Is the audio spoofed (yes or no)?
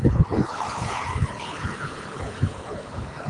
yes